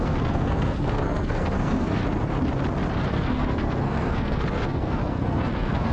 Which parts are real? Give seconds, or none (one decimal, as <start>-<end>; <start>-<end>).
2.0-3.1